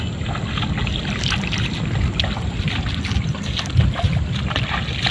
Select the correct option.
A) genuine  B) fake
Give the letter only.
A